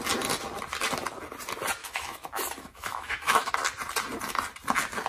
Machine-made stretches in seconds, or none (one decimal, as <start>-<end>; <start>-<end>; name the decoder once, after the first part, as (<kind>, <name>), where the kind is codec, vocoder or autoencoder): 1.8-3.5 (autoencoder, DAC-VAE)